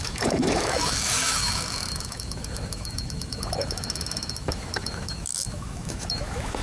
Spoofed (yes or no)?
yes